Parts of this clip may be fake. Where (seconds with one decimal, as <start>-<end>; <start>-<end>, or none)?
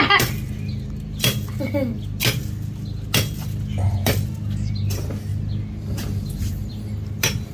none